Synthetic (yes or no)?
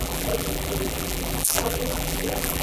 yes